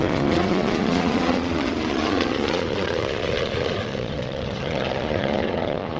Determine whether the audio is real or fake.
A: fake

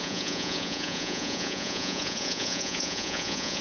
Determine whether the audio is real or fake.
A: fake